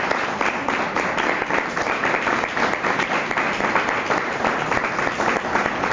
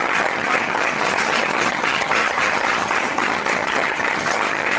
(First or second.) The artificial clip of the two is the second